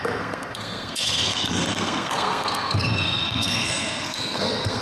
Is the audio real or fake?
fake